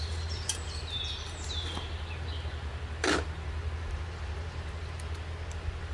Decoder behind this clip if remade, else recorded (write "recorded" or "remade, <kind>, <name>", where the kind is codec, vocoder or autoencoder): recorded